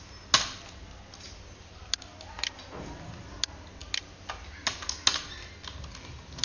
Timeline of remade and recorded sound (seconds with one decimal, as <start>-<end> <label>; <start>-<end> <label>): 0.0-6.4 recorded